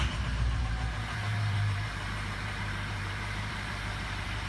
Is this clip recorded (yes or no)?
no